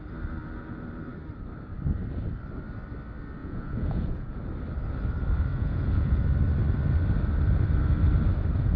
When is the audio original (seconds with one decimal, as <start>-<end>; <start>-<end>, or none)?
0.0-3.4; 4.4-5.5; 6.2-8.8